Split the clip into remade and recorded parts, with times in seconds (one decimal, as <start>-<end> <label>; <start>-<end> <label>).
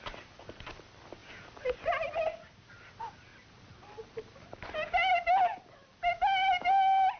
0.0-7.2 recorded